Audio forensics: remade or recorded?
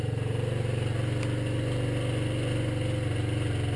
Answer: recorded